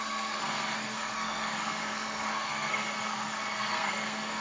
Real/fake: fake